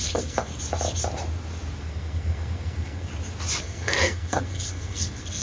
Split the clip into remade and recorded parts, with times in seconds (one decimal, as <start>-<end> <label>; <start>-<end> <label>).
0.0-0.5 remade; 0.5-1.8 recorded; 1.8-3.1 remade; 3.1-3.6 recorded; 3.6-5.4 remade